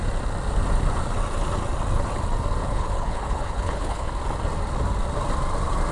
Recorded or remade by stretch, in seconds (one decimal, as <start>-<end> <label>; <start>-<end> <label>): 0.0-2.6 recorded; 2.6-4.1 remade; 4.1-5.9 recorded